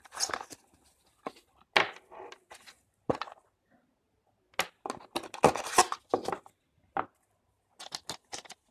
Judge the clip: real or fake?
real